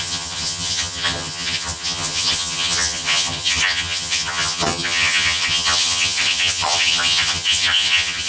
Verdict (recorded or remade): remade